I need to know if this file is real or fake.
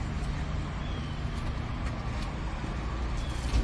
real